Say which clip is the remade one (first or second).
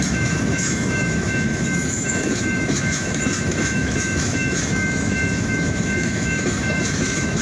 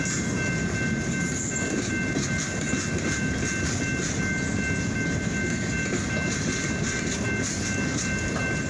first